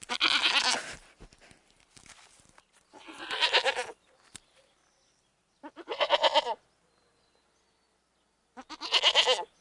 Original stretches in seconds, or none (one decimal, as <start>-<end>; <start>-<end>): 0.0-0.8; 6.0-9.6